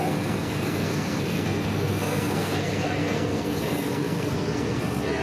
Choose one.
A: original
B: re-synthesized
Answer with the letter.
B